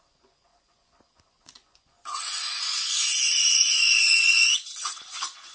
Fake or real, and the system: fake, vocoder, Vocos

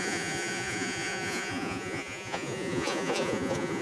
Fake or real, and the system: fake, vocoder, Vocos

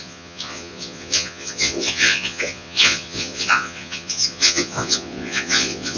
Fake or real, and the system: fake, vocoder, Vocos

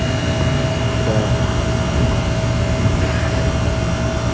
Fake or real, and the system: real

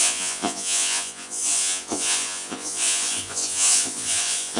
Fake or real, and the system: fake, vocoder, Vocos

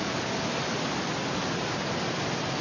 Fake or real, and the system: real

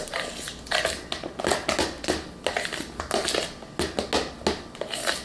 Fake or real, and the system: real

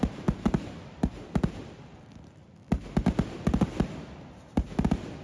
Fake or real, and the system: real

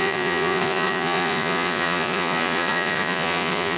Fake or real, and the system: fake, vocoder, Vocos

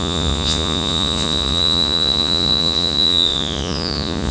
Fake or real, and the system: fake, vocoder, Vocos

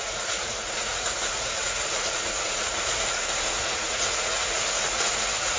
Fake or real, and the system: fake, vocoder, Vocos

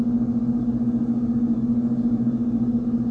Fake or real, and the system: real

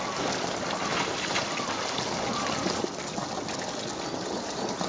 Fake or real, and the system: real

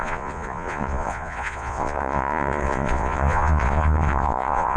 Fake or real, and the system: fake, vocoder, Vocos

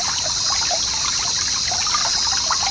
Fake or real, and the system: real